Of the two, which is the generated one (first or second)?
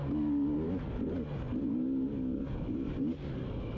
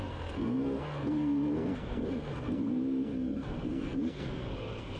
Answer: second